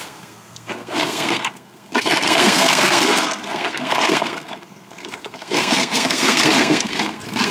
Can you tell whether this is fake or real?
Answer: fake